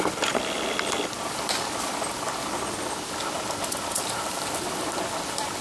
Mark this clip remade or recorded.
recorded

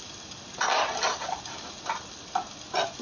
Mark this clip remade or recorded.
recorded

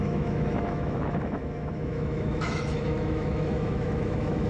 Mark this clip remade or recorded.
remade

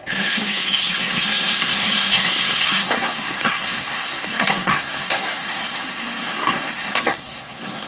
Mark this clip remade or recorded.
remade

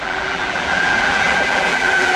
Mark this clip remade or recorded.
remade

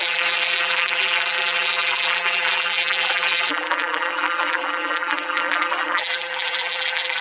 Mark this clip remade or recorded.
remade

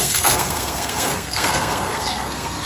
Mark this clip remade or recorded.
remade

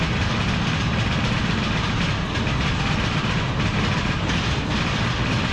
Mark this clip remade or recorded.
recorded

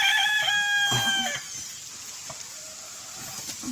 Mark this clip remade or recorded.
recorded